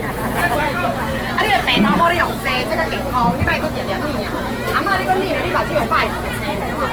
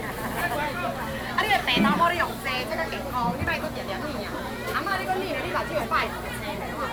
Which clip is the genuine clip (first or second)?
second